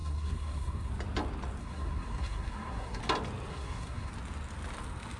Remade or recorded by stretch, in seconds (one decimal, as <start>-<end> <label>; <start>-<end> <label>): 0.0-0.9 remade; 0.9-1.6 recorded; 1.6-3.0 remade; 3.0-3.5 recorded; 3.5-4.1 remade; 4.1-5.2 recorded